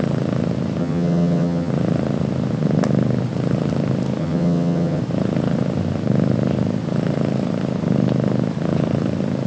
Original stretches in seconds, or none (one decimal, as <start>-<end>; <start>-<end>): 0.0-0.8; 1.7-4.2; 5.0-9.5